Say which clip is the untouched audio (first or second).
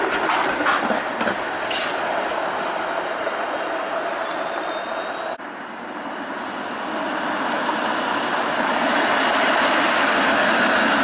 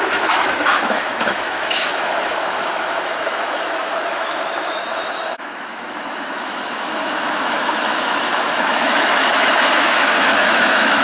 first